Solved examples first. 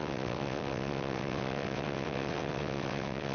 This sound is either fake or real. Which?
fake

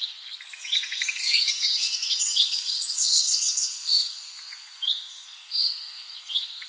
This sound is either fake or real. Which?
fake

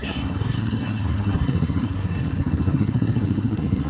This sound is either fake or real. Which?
fake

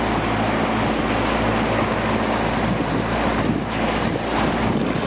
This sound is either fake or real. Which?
real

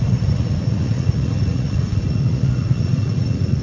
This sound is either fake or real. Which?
fake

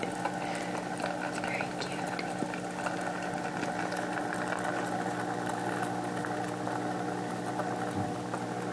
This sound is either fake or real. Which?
real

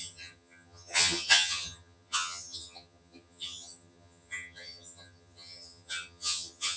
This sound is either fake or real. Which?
fake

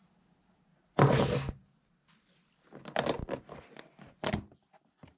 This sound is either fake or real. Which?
real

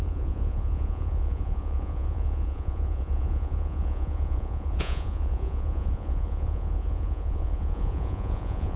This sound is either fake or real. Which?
fake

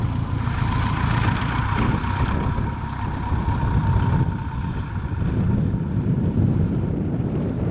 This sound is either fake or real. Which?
fake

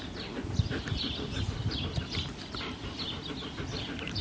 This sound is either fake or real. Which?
real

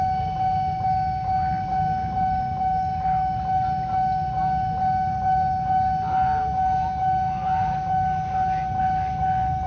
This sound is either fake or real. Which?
real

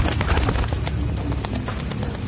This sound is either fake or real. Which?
real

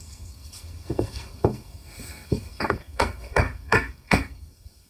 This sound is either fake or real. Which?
fake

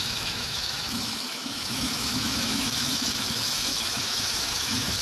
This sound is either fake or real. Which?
fake